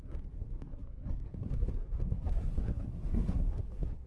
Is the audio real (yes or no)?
no